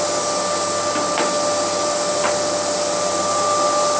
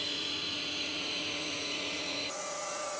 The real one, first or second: first